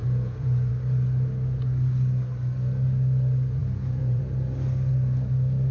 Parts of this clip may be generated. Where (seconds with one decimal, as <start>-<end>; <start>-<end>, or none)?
0.0-0.7; 3.6-4.2